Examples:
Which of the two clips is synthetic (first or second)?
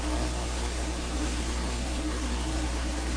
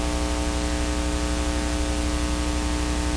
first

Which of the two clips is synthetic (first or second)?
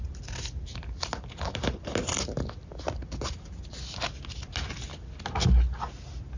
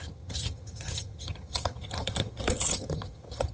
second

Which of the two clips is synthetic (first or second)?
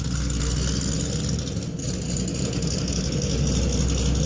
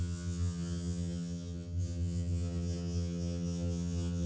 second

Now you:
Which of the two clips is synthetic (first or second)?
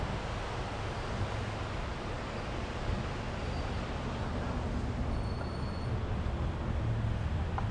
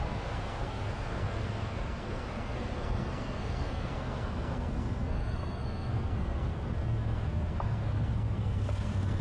second